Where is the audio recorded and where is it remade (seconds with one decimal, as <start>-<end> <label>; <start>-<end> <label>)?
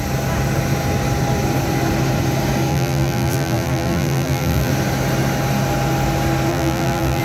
0.0-2.7 recorded; 2.7-4.7 remade; 4.7-6.5 recorded; 6.5-7.2 remade